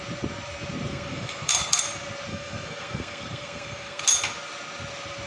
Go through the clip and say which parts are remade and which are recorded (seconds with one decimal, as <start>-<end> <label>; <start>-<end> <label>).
0.0-0.9 recorded; 0.9-1.8 remade; 1.8-2.3 recorded; 2.3-4.0 remade; 4.0-5.3 recorded